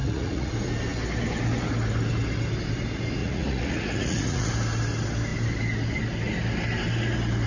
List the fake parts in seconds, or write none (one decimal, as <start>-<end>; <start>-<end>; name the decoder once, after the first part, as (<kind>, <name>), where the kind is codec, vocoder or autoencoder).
0.0-0.5 (vocoder, Vocos); 3.2-4.5